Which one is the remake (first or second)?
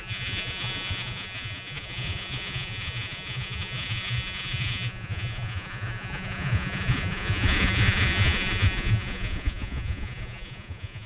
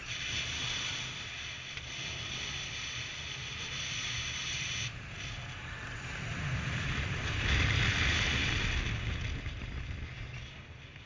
first